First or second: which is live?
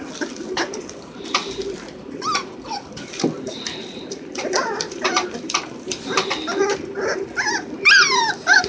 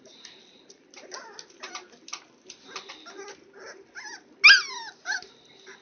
second